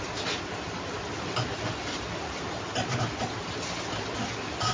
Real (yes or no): yes